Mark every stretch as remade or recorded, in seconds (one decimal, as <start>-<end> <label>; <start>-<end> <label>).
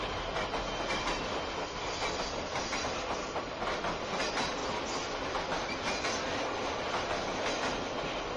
0.0-8.4 recorded